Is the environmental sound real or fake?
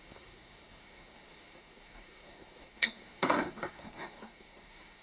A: fake